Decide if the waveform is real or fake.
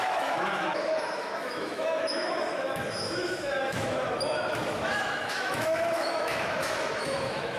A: fake